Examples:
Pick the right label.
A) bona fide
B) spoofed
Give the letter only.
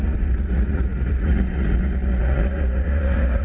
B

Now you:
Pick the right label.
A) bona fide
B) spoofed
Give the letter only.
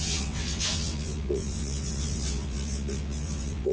B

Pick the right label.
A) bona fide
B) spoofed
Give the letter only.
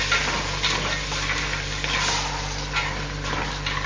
A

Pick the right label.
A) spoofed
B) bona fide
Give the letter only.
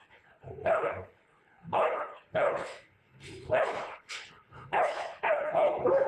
A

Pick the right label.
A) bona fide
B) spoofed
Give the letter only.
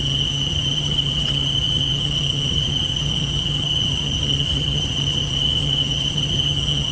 B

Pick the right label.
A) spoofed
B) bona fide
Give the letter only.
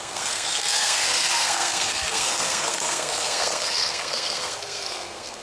A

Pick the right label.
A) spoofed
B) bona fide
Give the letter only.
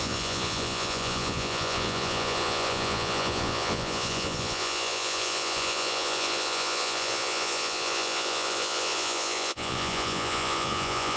A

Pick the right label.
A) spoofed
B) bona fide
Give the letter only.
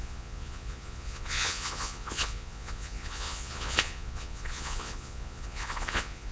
A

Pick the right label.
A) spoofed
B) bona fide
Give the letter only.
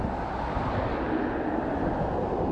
B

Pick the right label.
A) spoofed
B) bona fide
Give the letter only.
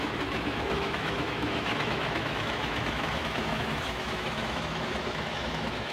A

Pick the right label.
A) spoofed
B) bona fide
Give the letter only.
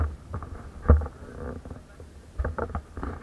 B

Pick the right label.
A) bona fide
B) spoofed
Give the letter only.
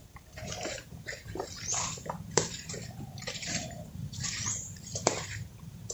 B